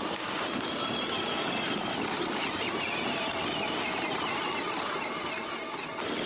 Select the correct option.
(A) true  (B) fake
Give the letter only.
A